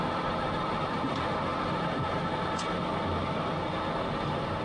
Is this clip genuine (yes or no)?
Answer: yes